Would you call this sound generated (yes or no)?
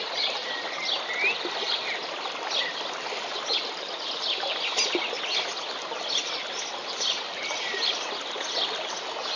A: no